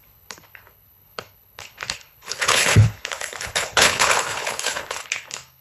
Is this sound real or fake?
fake